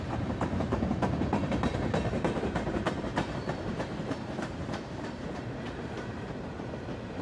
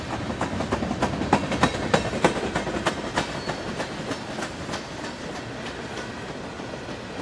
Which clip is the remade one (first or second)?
first